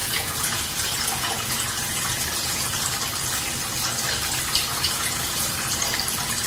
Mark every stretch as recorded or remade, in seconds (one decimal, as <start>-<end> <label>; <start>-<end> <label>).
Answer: 0.0-2.5 remade; 2.5-4.7 recorded; 4.7-5.8 remade; 5.8-6.5 recorded

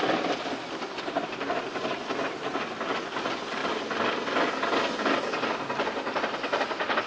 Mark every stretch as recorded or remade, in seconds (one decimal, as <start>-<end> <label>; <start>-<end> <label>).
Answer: 0.0-7.1 recorded